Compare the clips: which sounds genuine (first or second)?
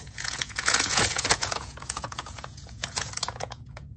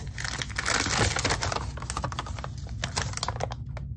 second